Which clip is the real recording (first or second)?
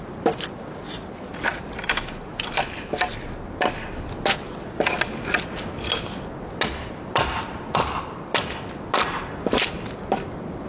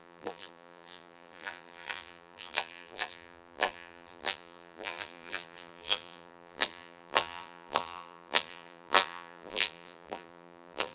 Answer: first